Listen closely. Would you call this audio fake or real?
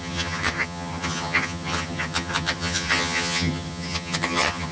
fake